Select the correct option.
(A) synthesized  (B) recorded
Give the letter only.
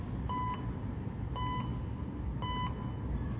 B